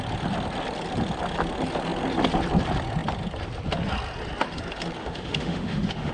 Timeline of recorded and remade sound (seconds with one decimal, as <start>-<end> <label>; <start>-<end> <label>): 0.0-5.0 recorded; 5.0-6.1 remade